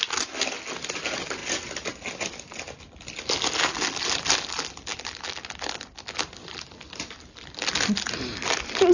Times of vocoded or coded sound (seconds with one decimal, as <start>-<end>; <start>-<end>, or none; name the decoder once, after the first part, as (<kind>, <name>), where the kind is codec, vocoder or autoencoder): none